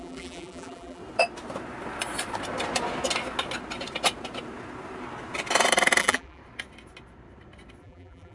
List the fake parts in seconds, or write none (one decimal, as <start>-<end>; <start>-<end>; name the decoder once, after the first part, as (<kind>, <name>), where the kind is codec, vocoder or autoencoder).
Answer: 0.0-1.0 (vocoder, BigVGAN v2); 6.0-6.4; 7.8-8.3